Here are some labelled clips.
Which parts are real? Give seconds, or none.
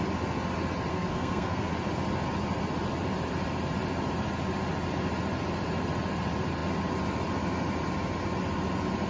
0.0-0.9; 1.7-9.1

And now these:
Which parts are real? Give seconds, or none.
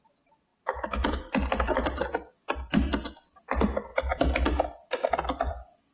0.0-5.9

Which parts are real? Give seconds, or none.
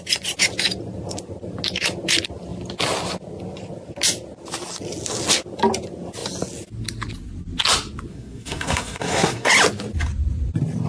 0.0-8.1; 9.5-10.9